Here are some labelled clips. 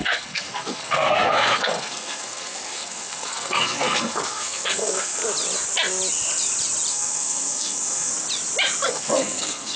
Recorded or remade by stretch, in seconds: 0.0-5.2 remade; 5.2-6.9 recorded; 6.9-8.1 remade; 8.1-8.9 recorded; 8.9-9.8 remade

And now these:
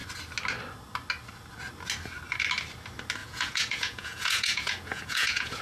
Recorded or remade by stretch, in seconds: 0.0-3.2 recorded; 3.2-5.6 remade

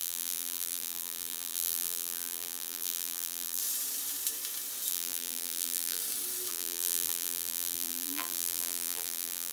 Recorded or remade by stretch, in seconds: 0.0-3.6 remade; 3.6-4.9 recorded; 4.9-6.0 remade; 6.0-6.5 recorded; 6.5-9.5 remade

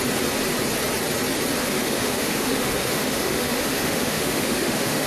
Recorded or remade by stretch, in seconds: 0.0-1.6 recorded; 1.6-5.1 remade